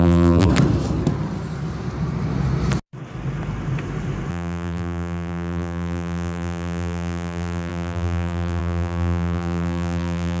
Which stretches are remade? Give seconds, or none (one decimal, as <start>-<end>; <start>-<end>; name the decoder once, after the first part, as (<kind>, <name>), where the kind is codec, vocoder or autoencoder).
0.0-0.5 (vocoder, BigVGAN v2); 4.3-10.4